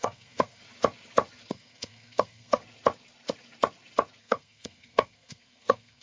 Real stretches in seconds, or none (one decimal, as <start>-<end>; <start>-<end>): 0.6-1.5; 2.6-4.2

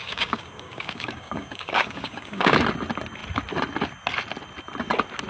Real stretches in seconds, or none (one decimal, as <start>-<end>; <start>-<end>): 2.6-5.3

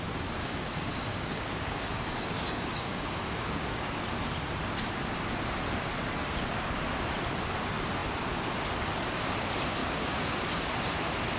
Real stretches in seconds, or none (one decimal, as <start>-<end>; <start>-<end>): 0.0-0.4; 4.0-9.8; 10.3-11.4

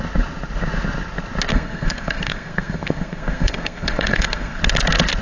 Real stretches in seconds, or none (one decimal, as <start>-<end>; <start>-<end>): 0.0-1.5; 4.6-5.2

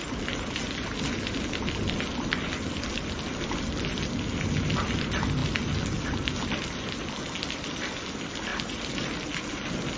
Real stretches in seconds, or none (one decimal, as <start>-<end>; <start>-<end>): 0.0-10.0

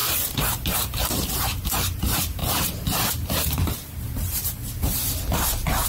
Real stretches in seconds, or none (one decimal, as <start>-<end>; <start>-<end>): 2.4-3.1